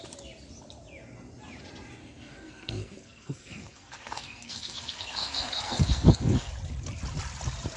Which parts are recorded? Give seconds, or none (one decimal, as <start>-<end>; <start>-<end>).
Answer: 0.0-2.0; 6.5-7.8